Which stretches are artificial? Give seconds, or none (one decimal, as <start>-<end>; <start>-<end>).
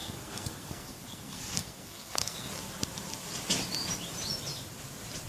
0.0-2.5